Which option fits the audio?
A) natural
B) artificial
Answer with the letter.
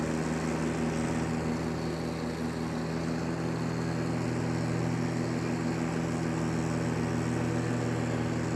A